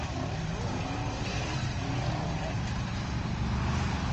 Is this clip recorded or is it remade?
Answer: remade